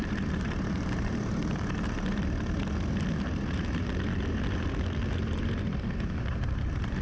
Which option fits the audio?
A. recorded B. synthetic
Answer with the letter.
B